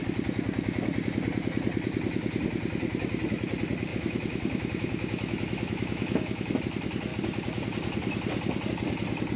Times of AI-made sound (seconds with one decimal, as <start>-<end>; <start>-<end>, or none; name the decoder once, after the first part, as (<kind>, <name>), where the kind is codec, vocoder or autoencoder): 3.9-6.6 (autoencoder, DAC-VAE)